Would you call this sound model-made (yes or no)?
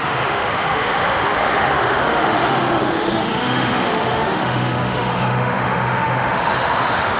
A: yes